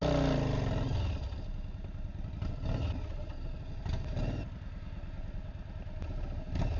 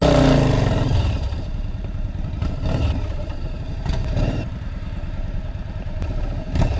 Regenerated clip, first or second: second